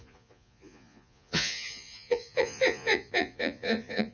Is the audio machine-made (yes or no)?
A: yes